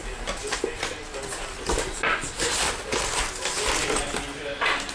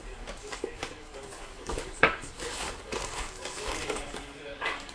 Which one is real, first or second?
first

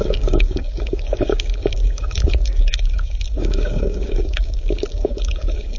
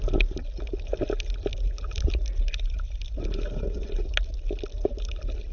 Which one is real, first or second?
second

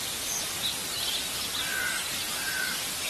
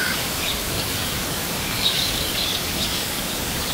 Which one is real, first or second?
first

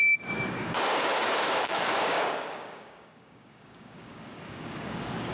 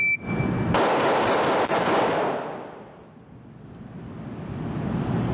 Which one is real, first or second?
second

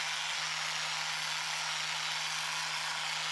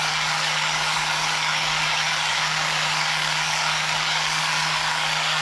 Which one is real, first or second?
first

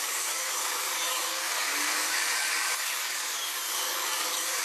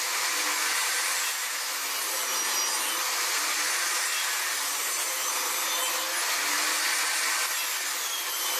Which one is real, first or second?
second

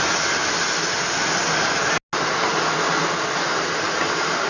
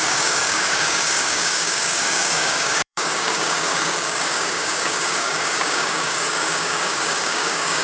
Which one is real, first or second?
first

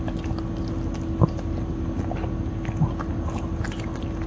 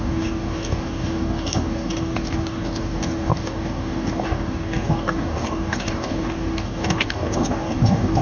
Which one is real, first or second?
first